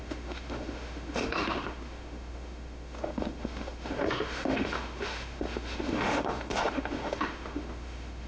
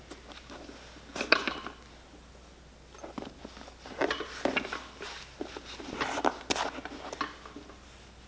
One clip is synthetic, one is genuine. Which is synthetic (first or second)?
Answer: first